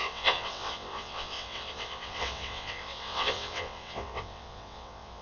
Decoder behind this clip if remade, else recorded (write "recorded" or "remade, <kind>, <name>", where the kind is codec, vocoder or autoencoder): remade, vocoder, WaveNeXt